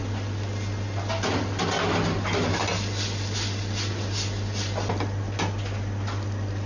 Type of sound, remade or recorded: recorded